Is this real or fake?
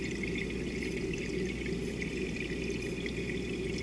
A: real